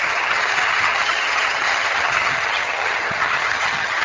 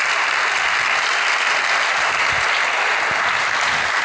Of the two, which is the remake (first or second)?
first